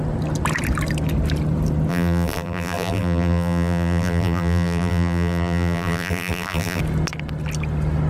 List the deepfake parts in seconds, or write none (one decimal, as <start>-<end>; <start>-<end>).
1.9-6.8